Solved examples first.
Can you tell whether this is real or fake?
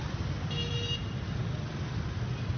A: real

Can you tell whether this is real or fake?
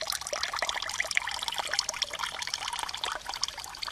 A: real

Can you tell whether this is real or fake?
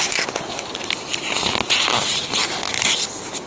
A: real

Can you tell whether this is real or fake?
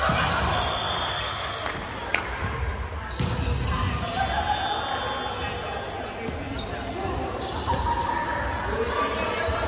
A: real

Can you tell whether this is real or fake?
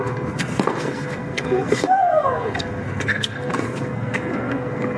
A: fake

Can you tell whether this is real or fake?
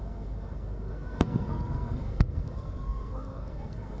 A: fake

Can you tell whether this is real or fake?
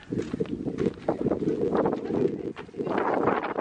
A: real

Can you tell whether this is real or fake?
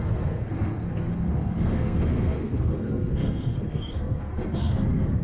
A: fake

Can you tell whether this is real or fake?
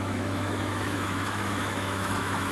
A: fake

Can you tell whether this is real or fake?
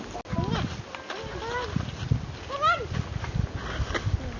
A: real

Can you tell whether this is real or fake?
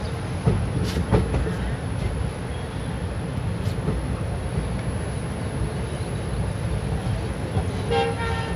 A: real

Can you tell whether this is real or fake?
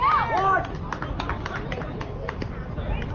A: fake